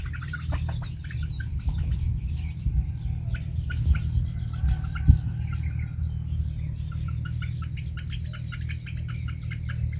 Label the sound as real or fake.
real